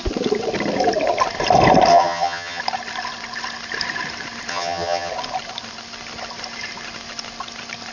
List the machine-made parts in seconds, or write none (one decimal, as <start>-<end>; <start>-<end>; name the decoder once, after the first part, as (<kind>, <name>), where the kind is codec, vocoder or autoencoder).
1.9-2.6 (vocoder, HiFi-GAN); 4.5-5.1